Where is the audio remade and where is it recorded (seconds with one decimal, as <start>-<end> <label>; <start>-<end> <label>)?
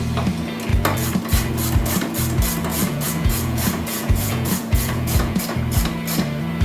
0.0-2.7 recorded; 2.7-5.4 remade; 5.4-6.6 recorded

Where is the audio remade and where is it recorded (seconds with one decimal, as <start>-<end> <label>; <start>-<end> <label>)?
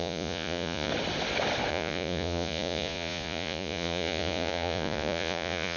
0.0-0.9 remade; 0.9-1.7 recorded; 1.7-5.8 remade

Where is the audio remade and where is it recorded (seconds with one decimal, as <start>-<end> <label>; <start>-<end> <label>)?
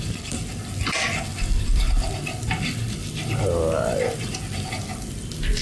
0.0-5.6 recorded